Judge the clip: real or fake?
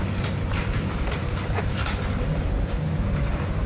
real